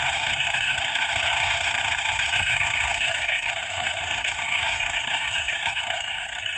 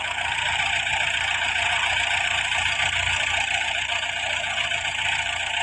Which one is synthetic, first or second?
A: first